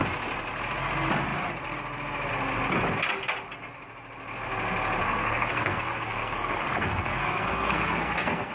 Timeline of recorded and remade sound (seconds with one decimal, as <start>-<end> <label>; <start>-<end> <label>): 0.0-5.0 recorded; 5.0-8.5 remade